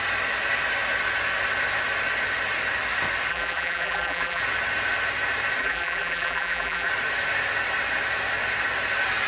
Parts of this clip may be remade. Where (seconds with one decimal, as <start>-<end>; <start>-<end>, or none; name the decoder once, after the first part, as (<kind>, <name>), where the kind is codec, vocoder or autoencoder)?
3.3-4.4 (vocoder, BigVGAN v2); 5.6-6.9